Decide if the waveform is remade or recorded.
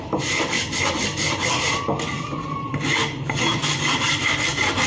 recorded